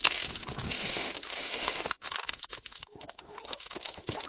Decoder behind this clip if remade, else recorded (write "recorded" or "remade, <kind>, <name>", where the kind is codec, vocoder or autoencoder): remade, autoencoder, DAC-VAE